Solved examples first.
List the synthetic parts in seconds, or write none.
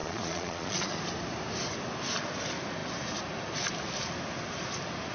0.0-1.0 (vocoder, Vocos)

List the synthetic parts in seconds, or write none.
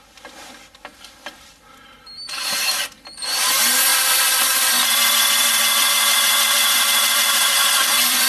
0.9-3.2 (vocoder, BigVGAN v2); 3.9-8.3